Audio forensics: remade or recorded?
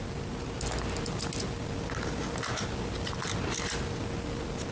recorded